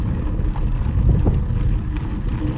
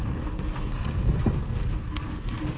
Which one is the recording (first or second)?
first